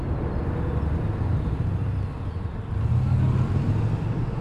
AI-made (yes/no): no